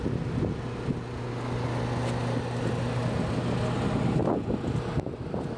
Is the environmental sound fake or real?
real